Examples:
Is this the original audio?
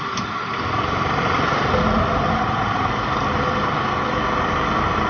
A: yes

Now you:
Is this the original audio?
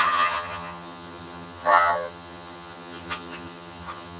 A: no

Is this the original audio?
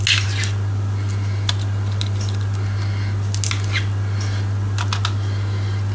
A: yes